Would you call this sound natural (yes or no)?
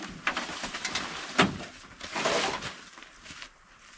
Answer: yes